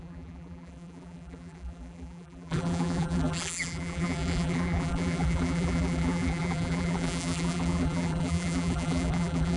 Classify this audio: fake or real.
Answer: fake